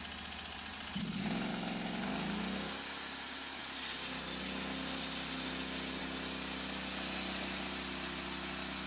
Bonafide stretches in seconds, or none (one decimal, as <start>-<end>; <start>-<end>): 0.0-8.9